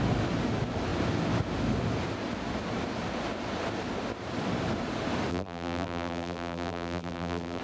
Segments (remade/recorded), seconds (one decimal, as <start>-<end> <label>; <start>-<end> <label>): 0.0-5.3 recorded; 5.3-7.6 remade